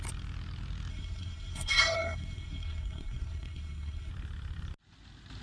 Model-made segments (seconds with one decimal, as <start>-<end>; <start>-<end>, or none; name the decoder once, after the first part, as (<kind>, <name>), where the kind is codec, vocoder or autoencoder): 0.9-4.1 (codec, SNAC)